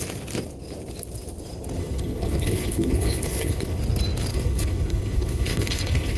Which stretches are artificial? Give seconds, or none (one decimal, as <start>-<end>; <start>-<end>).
1.8-3.8; 4.3-6.2